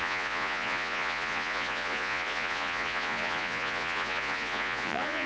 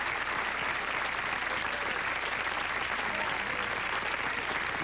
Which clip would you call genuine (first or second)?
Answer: second